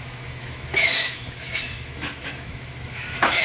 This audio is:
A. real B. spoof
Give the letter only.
B